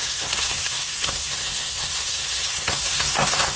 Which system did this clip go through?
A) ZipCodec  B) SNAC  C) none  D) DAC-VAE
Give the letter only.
B